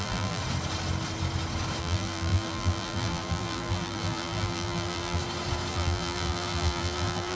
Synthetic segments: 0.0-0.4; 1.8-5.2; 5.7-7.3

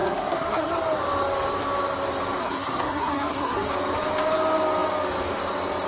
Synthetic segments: 0.0-0.7; 2.4-3.7

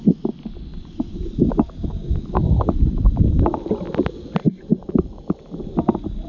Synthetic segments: none

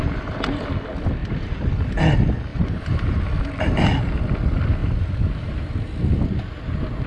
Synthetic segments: 1.2-1.7; 2.5-3.2; 4.8-6.2

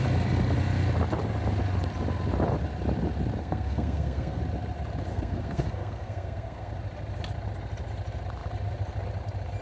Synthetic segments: 3.4-4.4; 5.1-6.7

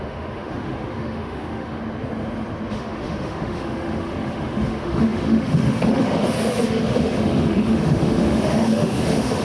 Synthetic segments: 0.0-1.8; 2.7-9.4

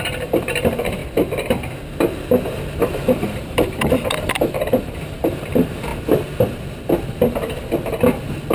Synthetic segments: 0.0-1.0; 2.8-5.9